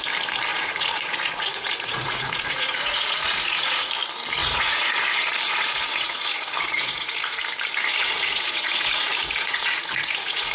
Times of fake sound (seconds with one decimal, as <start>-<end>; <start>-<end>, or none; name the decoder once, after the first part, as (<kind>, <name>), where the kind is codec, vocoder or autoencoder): 0.5-3.9 (vocoder, Vocos); 4.4-7.4; 7.9-10.5